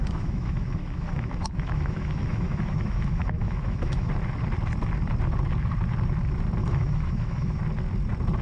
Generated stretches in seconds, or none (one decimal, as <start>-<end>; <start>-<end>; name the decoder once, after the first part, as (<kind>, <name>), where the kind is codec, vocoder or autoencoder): 0.0-4.1 (autoencoder, DAC-VAE); 6.6-7.6